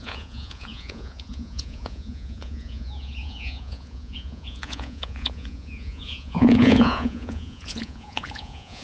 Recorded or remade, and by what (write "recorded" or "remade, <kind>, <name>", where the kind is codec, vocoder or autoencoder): remade, vocoder, Vocos